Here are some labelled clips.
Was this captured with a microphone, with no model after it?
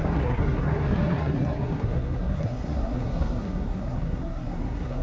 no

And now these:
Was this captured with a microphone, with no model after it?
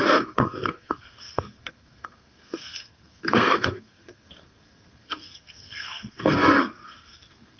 no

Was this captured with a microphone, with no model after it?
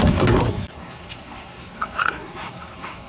no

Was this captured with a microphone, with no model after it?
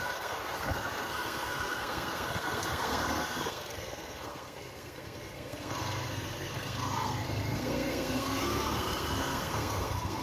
no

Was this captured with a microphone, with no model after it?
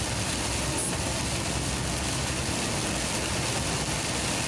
yes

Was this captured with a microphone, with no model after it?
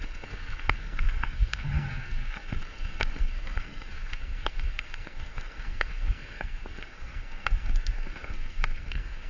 no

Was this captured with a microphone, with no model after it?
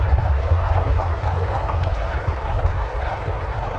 no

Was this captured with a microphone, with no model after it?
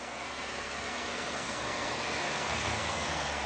no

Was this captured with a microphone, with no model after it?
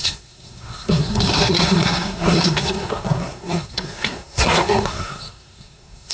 no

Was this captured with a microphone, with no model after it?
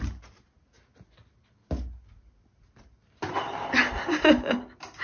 yes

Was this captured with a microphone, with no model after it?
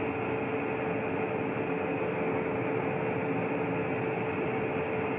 yes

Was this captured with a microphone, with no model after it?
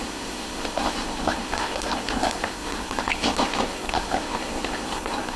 no